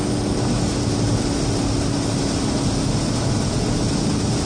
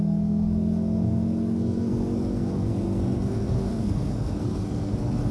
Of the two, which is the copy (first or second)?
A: second